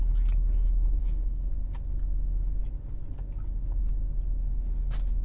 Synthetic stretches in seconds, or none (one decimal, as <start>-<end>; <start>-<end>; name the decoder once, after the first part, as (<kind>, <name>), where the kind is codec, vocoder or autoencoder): 1.0-1.5 (codec, SNAC)